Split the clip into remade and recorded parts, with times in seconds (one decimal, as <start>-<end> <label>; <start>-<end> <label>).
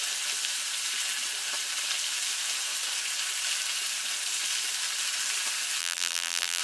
0.0-5.8 recorded; 5.8-6.6 remade